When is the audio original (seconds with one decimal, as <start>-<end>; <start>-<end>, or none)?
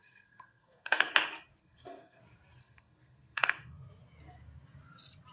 1.1-1.6; 2.2-2.6; 3.9-5.3